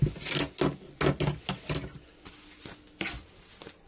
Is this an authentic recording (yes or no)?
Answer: yes